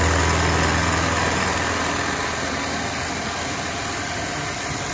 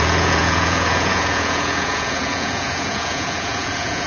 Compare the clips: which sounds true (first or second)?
first